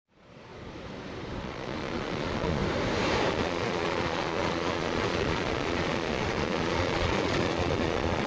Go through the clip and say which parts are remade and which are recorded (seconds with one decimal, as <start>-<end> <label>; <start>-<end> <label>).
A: 0.0-0.5 remade; 0.5-1.4 recorded; 1.4-2.6 remade; 2.6-3.3 recorded; 3.3-8.3 remade